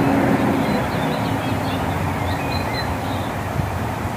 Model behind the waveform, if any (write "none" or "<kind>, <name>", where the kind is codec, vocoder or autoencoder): vocoder, BigVGAN v2